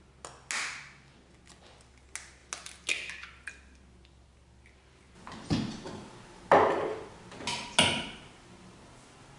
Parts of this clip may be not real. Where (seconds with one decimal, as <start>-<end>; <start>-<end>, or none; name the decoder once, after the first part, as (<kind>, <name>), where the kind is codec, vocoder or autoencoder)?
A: none

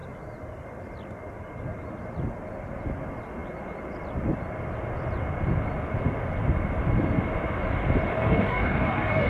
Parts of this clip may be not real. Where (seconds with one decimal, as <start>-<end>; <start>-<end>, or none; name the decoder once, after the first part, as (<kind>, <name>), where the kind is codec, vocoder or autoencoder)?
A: 8.1-9.3 (codec, DAC)

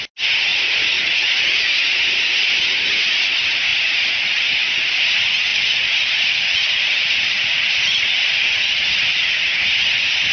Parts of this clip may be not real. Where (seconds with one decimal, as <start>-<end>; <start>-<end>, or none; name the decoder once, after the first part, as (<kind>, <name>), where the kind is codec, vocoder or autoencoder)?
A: 0.5-1.6 (vocoder, Vocos); 3.7-5.0; 5.5-8.6

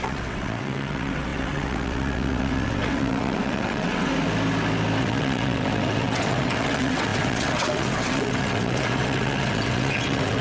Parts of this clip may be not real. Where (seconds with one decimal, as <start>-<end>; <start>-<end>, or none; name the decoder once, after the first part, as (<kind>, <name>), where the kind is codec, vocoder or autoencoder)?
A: 0.0-4.1 (vocoder, WaveNeXt); 5.0-10.4

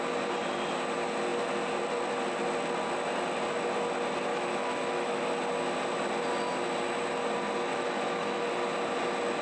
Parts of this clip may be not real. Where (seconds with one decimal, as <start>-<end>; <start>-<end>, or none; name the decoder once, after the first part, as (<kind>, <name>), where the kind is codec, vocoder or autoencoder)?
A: 4.3-5.2 (autoencoder, DAC-VAE); 7.7-8.4

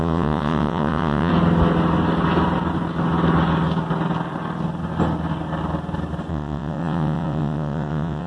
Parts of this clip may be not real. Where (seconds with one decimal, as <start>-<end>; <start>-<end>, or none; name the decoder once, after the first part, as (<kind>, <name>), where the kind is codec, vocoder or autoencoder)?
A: 0.0-1.3 (vocoder, WaveNeXt); 6.3-8.3

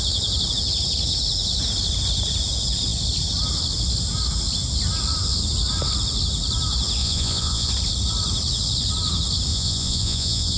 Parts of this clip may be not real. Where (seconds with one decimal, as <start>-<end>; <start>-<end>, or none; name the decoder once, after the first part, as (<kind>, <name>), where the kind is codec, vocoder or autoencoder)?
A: 7.0-7.7 (vocoder, Vocos); 9.5-10.6

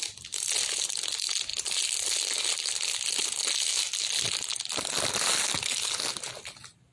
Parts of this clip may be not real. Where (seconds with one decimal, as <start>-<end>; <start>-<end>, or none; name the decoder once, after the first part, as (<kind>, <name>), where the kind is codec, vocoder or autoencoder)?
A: none